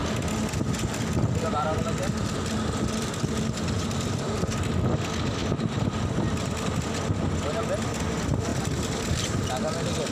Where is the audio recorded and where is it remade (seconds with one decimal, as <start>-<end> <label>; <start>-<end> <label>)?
0.0-4.1 remade; 4.1-5.4 recorded; 5.4-6.7 remade; 6.7-10.1 recorded